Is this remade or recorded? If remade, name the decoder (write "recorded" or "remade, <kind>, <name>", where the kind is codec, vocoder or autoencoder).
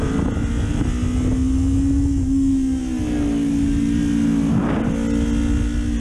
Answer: recorded